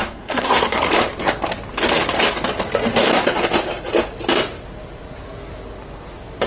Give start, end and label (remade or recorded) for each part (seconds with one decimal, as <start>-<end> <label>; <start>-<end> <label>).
0.0-0.8 remade; 0.8-6.5 recorded